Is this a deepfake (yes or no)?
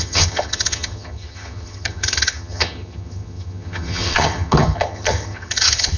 yes